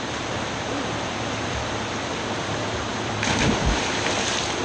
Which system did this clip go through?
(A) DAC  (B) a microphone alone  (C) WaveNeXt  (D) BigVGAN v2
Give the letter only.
D